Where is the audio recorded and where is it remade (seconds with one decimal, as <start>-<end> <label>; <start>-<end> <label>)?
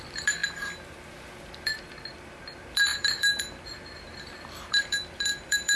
0.0-0.4 remade; 0.4-1.2 recorded; 1.2-5.8 remade